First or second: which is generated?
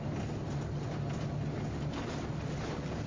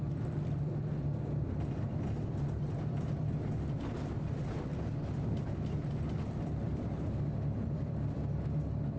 second